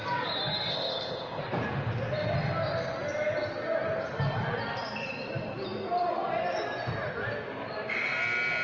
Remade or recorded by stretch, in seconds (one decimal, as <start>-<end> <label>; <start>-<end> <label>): 0.0-0.7 recorded; 0.7-1.4 remade; 1.4-8.6 recorded